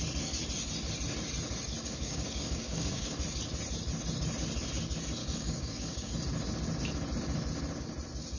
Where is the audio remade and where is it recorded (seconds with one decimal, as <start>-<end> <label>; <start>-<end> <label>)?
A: 0.0-1.8 recorded; 1.8-3.1 remade; 3.1-5.2 recorded; 5.2-6.1 remade; 6.1-8.4 recorded